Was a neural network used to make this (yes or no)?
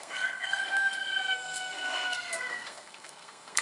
yes